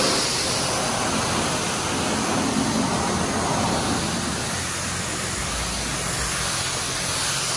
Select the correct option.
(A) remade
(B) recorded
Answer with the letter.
B